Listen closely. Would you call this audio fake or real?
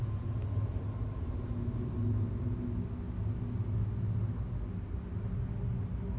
real